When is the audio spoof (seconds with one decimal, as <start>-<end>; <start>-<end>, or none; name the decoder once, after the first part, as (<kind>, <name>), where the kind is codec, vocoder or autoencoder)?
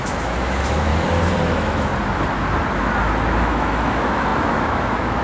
0.0-0.9 (autoencoder, DAC-VAE); 1.4-1.9; 3.4-5.2